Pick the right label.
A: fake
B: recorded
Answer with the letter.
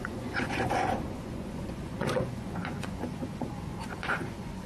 A